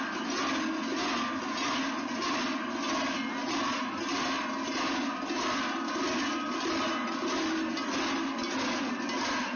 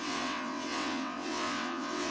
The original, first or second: first